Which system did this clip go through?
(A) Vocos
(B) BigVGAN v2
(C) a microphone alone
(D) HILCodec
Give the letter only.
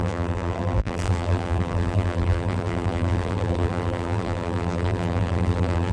B